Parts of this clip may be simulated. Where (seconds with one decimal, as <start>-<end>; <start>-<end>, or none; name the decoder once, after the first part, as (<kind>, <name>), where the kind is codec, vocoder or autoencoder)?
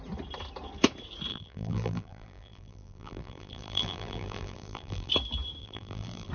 1.3-5.1 (vocoder, BigVGAN v2); 5.6-6.3